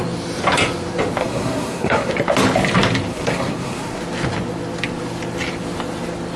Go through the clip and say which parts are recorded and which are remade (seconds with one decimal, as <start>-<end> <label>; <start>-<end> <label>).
0.0-1.2 recorded; 1.2-2.1 remade; 2.1-3.1 recorded; 3.1-4.0 remade; 4.0-6.4 recorded

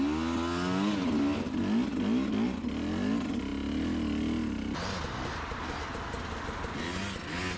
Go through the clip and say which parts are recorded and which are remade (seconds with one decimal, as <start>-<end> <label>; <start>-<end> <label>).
0.0-7.6 recorded

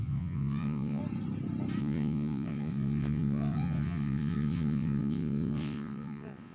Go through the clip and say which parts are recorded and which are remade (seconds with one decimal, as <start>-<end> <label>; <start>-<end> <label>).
0.0-1.0 remade; 1.0-1.8 recorded; 1.8-6.5 remade

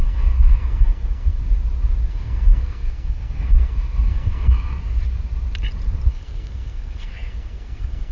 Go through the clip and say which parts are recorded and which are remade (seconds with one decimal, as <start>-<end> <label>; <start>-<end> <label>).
0.0-1.4 remade; 1.4-2.1 recorded; 2.1-4.7 remade; 4.7-6.1 recorded; 6.1-8.1 remade

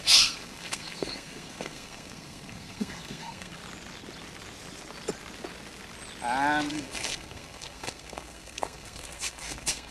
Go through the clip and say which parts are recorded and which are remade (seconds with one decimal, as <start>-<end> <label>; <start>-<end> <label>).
0.0-3.6 remade; 3.6-6.7 recorded; 6.7-9.9 remade